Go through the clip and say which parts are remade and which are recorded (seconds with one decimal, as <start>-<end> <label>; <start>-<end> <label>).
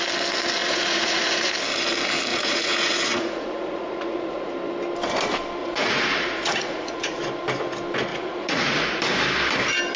0.0-0.6 recorded; 0.6-1.6 remade; 1.6-2.3 recorded; 2.3-4.5 remade; 4.5-5.6 recorded; 5.6-7.2 remade; 7.2-8.1 recorded; 8.1-9.0 remade; 9.0-10.0 recorded